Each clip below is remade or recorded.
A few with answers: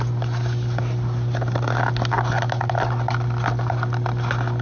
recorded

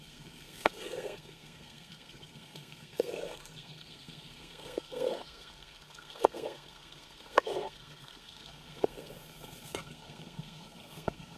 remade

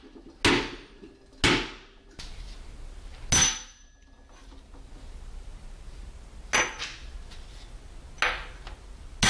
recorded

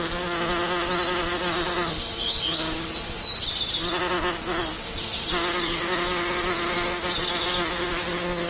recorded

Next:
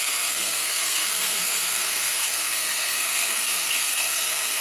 remade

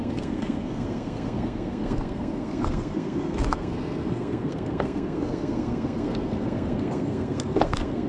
remade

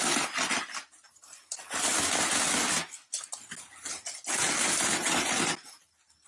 recorded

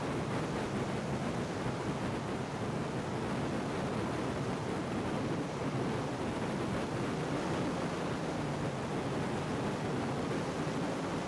recorded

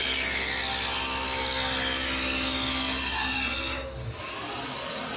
recorded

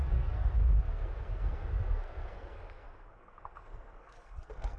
remade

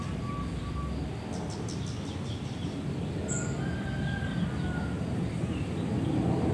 recorded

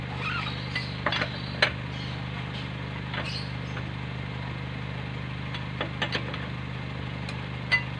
recorded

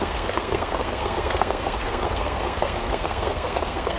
remade